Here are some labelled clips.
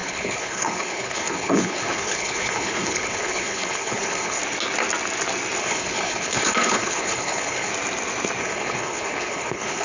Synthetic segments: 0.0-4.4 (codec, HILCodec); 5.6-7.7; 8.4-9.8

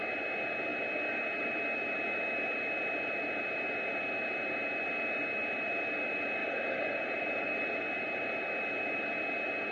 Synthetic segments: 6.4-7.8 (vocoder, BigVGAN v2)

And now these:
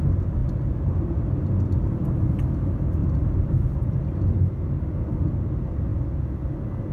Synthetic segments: none